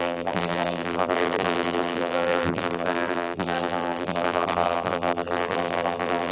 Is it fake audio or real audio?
fake